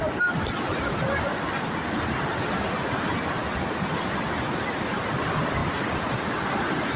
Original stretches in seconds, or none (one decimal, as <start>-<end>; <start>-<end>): 0.0-1.3; 1.9-3.4; 4.1-5.6; 6.3-7.0